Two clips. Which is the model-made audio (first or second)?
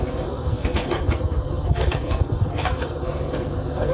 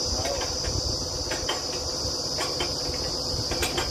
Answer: first